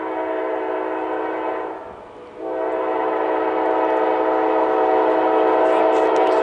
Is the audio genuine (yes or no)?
yes